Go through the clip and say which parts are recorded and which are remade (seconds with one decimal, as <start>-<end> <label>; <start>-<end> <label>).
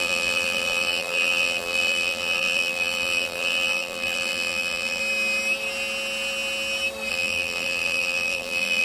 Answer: 0.0-5.0 remade; 5.0-7.1 recorded; 7.1-8.8 remade